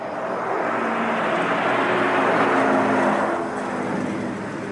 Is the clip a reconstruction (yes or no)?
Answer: no